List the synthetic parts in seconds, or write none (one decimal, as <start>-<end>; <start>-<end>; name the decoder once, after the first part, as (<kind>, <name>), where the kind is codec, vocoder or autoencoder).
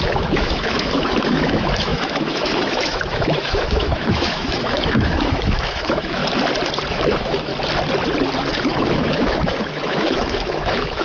0.0-6.2 (autoencoder, DAC-VAE); 6.9-7.5; 8.6-11.0